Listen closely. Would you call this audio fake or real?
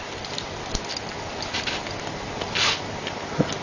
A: real